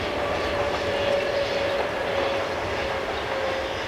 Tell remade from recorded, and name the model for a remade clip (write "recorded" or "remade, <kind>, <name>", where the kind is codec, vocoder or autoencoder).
recorded